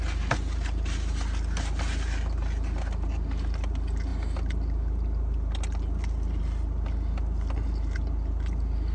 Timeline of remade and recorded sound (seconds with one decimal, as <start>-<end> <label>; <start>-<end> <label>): 0.0-8.9 recorded